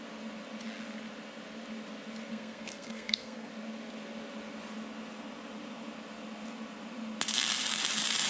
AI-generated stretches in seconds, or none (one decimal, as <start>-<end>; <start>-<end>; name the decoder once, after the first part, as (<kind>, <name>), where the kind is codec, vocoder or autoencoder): 2.3-3.5 (codec, SNAC)